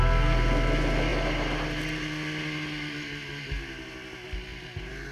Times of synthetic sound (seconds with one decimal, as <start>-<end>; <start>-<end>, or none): none